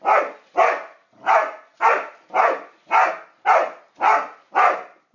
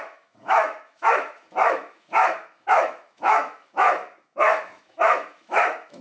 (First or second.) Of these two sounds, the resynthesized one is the second